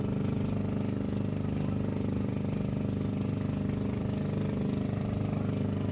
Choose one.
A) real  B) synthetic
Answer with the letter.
A